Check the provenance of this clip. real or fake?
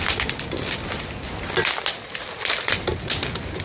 real